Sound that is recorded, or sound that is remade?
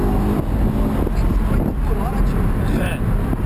recorded